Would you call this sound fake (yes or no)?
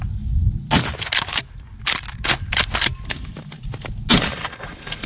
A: no